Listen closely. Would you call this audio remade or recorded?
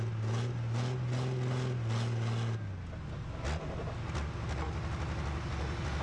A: recorded